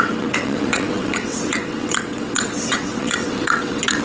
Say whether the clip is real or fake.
fake